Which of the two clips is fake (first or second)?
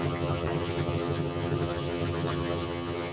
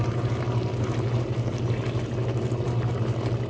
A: first